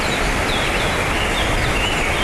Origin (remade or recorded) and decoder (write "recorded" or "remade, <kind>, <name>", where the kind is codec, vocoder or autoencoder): recorded